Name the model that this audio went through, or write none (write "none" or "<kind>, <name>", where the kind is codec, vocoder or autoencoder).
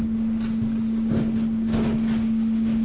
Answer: none